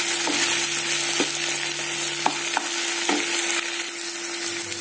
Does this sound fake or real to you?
real